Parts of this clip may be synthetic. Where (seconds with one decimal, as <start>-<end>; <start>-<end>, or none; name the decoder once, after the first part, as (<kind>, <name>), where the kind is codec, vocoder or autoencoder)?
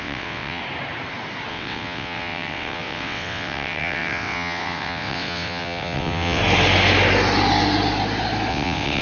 0.0-0.6 (vocoder, WaveNeXt); 1.5-6.4; 8.5-9.0